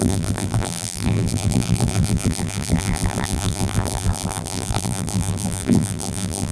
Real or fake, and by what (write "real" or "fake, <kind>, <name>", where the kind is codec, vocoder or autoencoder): fake, vocoder, BigVGAN v2